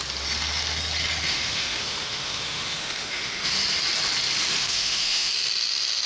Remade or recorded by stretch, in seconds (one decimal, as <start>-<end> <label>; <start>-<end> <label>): 0.0-1.3 recorded; 1.3-3.5 remade; 3.5-4.6 recorded; 4.6-5.3 remade; 5.3-6.1 recorded